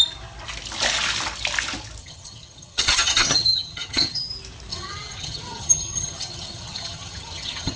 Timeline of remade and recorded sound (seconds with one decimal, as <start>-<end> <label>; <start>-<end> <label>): 0.0-2.0 recorded; 2.0-4.3 remade; 4.3-4.7 recorded; 4.7-7.8 remade